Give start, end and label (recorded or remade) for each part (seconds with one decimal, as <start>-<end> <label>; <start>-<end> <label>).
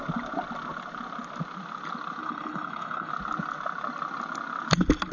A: 0.0-2.2 recorded; 2.2-3.1 remade; 3.1-5.1 recorded